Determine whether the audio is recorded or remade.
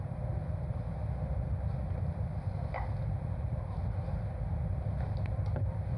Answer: recorded